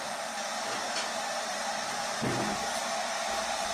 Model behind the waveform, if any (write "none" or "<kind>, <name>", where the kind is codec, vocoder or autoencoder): none